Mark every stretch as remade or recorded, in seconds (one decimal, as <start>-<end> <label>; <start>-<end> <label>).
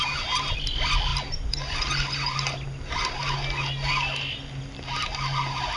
0.0-5.8 recorded